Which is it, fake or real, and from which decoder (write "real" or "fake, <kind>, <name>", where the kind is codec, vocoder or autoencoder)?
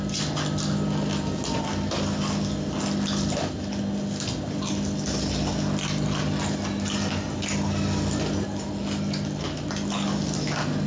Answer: real